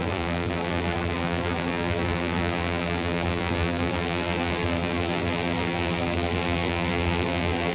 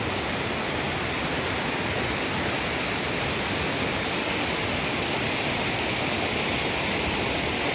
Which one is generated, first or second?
first